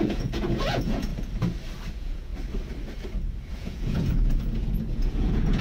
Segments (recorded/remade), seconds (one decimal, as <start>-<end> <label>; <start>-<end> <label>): 0.0-1.1 remade; 1.1-1.9 recorded; 1.9-2.3 remade; 2.3-3.5 recorded; 3.5-5.6 remade